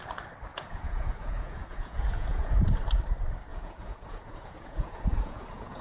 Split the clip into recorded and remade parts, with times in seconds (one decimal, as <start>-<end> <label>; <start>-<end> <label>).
0.0-0.5 recorded; 0.5-2.6 remade; 2.6-3.5 recorded; 3.5-5.8 remade